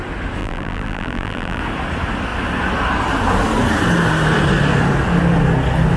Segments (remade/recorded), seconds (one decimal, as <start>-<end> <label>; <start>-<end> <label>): 0.0-0.4 recorded; 0.4-1.6 remade; 1.6-6.0 recorded